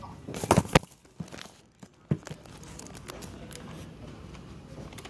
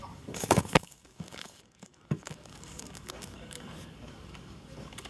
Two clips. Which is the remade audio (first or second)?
second